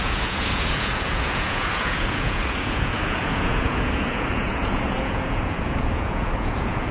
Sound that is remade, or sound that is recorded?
remade